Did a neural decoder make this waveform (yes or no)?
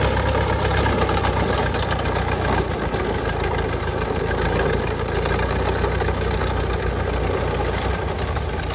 no